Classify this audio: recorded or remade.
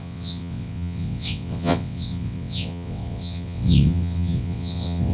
remade